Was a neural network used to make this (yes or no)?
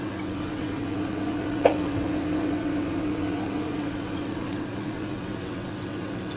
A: yes